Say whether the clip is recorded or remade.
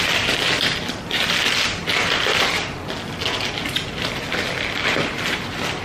recorded